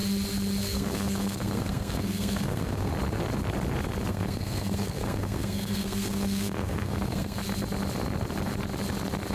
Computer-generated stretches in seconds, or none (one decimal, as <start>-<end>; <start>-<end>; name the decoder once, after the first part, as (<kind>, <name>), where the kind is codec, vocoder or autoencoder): 0.6-2.9 (codec, SNAC); 4.1-7.4